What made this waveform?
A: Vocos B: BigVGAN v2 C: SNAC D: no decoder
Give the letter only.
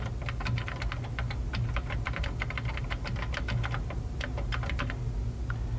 D